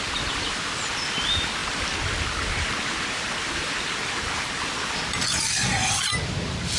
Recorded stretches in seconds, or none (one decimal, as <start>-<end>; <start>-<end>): 0.0-6.8